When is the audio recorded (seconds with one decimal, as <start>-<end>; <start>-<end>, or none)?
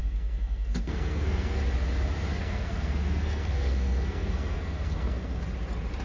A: 1.6-2.3; 5.4-6.0